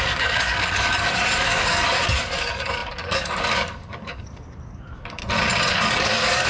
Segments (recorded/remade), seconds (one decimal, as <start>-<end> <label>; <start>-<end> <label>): 0.0-5.2 remade; 5.2-5.7 recorded; 5.7-6.5 remade